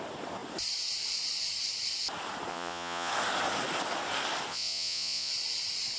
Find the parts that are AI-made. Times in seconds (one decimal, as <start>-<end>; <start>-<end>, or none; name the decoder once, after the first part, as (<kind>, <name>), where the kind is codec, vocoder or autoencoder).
2.5-3.1 (vocoder, Vocos); 4.5-5.3